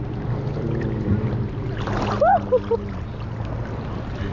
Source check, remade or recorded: recorded